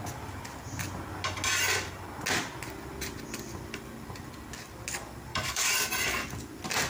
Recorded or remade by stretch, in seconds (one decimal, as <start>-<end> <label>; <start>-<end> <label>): 0.0-5.3 recorded; 5.3-5.9 remade; 5.9-6.9 recorded